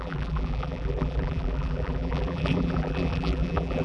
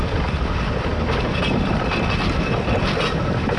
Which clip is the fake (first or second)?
first